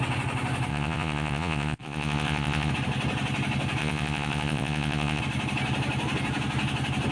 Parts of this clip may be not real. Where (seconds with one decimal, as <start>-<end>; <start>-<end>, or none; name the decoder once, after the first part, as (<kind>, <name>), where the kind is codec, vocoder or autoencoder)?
0.7-2.7 (vocoder, Vocos); 3.8-5.2